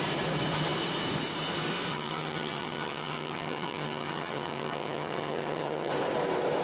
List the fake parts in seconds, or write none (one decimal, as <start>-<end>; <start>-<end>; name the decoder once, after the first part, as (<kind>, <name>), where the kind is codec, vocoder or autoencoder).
1.9-5.9 (vocoder, HiFi-GAN)